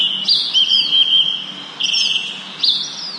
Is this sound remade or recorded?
recorded